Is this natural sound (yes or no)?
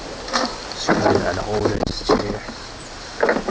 yes